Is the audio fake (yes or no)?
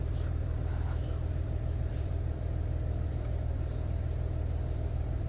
yes